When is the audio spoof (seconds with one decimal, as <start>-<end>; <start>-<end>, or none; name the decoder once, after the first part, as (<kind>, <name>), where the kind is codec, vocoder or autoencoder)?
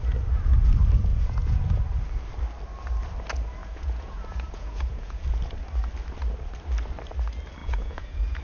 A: 1.1-1.6 (vocoder, Vocos); 3.6-5.2; 7.6-8.4